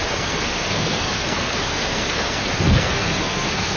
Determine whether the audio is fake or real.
fake